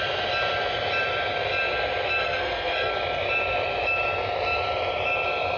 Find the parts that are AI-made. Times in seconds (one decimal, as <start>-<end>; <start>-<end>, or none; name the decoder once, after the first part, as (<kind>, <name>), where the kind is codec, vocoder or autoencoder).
2.2-2.9 (codec, SNAC)